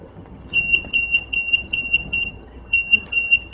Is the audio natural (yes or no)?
no